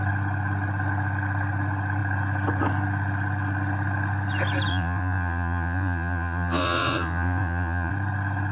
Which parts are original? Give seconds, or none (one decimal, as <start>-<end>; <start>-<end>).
0.0-4.7; 7.9-8.5

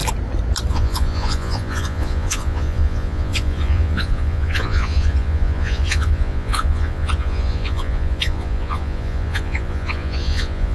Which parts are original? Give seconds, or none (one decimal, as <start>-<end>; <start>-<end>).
0.0-0.7

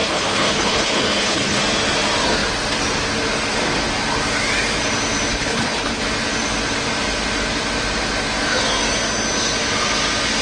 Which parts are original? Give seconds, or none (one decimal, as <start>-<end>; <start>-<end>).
1.6-5.3; 6.0-10.4

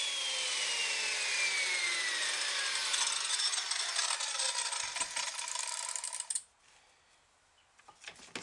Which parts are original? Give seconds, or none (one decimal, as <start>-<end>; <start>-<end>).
0.0-8.4